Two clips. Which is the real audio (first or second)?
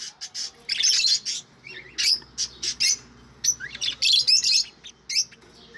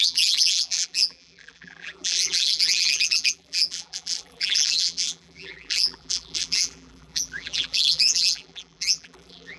first